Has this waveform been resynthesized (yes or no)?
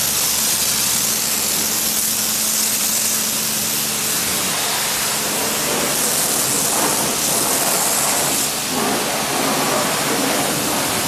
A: no